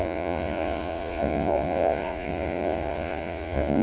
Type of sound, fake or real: fake